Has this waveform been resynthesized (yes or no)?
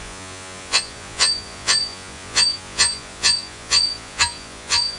yes